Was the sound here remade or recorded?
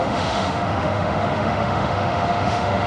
remade